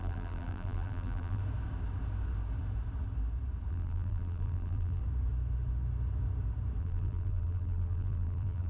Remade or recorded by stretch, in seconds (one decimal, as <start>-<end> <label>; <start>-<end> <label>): 0.0-1.4 remade; 1.4-3.7 recorded; 3.7-5.0 remade; 5.0-6.8 recorded; 6.8-8.7 remade